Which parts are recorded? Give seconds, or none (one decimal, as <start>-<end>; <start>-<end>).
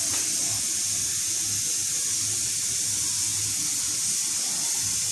0.0-5.1